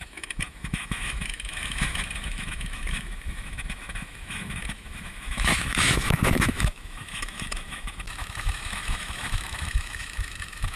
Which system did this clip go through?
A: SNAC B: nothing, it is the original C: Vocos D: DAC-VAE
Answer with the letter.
D